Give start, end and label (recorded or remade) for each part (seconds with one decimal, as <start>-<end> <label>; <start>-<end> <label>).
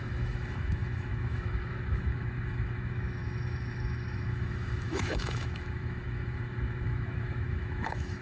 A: 0.0-8.2 remade